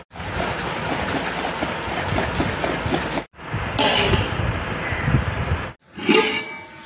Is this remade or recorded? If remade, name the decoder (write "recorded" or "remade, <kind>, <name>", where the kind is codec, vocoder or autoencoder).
recorded